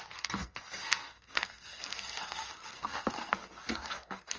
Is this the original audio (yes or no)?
no